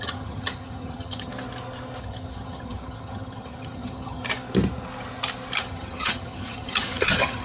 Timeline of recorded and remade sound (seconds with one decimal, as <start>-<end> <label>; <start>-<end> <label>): 0.0-1.3 remade; 1.3-2.0 recorded; 2.0-4.2 remade; 4.2-5.6 recorded; 5.6-7.4 remade